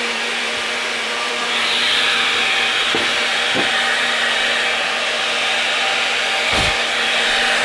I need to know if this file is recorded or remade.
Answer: remade